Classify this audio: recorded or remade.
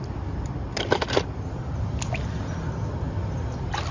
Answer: recorded